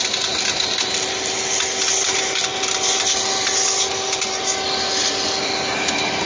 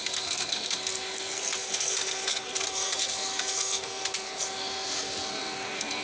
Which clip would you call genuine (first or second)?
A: first